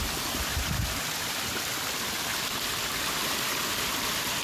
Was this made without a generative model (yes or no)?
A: no